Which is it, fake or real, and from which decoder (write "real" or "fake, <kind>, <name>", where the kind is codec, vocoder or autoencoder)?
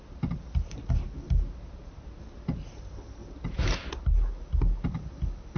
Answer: real